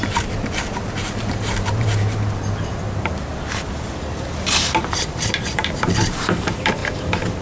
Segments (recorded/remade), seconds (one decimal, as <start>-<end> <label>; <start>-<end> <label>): 0.0-3.3 remade; 3.3-4.8 recorded; 4.8-6.8 remade; 6.8-7.4 recorded